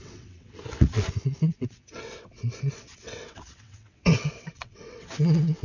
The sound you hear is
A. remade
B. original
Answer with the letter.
A